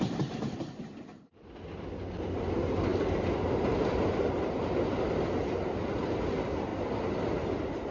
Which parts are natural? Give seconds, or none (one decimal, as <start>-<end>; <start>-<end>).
0.0-7.9